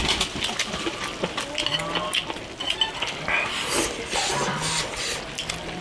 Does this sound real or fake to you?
real